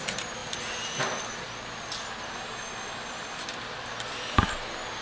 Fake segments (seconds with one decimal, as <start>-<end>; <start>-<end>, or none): 0.4-3.4